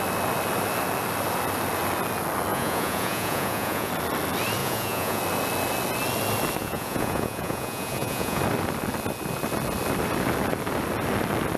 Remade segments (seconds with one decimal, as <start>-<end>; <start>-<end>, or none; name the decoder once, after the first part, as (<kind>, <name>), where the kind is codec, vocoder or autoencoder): 2.5-3.9 (vocoder, Vocos); 4.6-5.2; 6.6-8.4